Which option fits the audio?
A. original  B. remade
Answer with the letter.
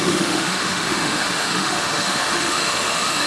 B